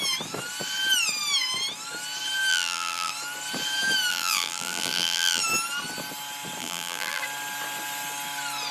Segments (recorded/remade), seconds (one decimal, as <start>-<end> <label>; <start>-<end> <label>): 0.0-2.5 recorded; 2.5-3.1 remade; 3.1-4.1 recorded; 4.1-5.4 remade; 5.4-6.6 recorded; 6.6-7.2 remade; 7.2-8.7 recorded